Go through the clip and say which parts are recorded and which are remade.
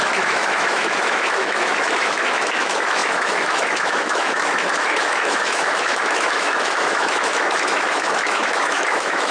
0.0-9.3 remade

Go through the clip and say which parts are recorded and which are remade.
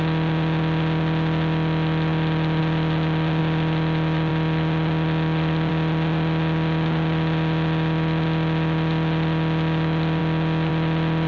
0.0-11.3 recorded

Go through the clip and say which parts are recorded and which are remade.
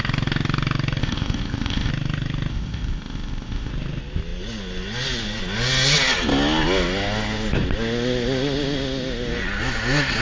0.0-1.0 recorded; 1.0-1.9 remade; 1.9-2.5 recorded; 2.5-3.7 remade; 3.7-10.2 recorded